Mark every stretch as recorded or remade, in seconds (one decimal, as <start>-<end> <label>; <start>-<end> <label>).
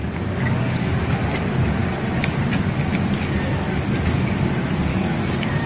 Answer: 0.0-1.0 remade; 1.0-4.9 recorded; 4.9-5.7 remade